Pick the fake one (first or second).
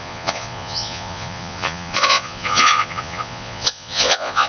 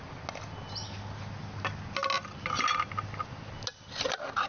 first